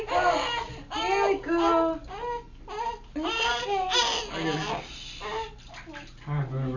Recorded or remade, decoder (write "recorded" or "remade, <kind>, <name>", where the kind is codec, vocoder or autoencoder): recorded